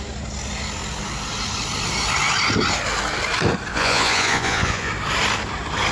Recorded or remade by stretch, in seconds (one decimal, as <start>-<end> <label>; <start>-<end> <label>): 0.0-3.7 recorded; 3.7-4.9 remade; 4.9-5.9 recorded